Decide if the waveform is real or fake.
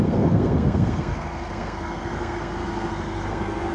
fake